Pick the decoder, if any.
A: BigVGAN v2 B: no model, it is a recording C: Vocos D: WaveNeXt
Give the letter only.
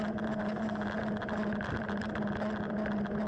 B